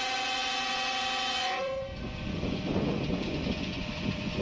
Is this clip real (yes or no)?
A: no